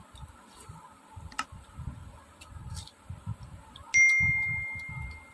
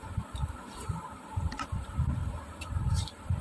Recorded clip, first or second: first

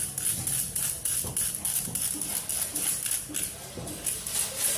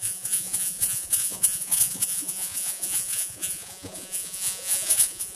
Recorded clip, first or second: first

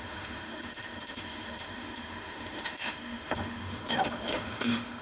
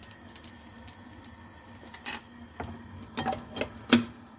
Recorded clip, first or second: second